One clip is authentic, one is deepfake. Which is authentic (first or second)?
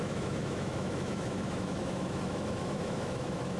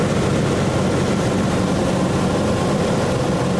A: second